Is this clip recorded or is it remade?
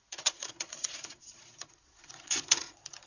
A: remade